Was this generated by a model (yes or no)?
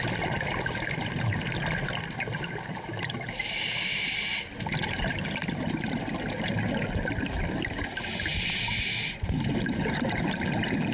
no